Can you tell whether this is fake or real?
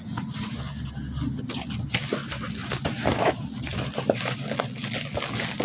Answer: real